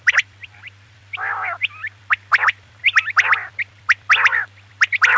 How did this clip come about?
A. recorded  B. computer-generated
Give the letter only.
B